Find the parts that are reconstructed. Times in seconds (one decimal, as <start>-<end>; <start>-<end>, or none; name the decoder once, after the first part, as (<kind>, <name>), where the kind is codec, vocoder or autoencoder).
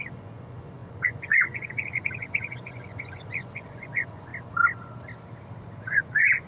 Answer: 0.0-4.3 (vocoder, Vocos); 5.6-6.5